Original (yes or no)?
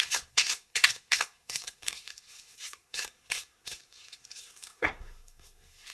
no